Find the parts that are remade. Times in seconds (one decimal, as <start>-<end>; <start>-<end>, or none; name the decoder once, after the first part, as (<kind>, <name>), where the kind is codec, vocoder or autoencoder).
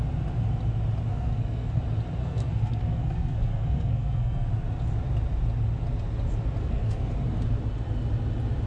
1.1-1.8 (codec, SNAC); 2.2-4.5; 6.6-7.1